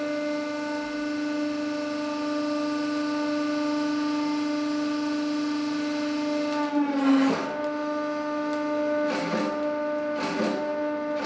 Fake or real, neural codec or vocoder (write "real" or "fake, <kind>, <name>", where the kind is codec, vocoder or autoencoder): real